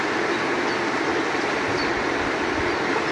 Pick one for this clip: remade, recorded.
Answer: recorded